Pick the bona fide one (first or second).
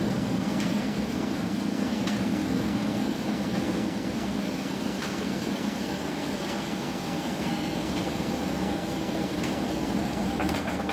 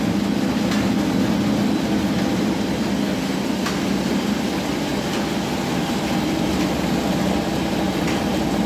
second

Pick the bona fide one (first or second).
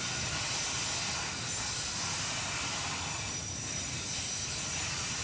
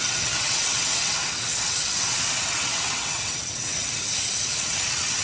first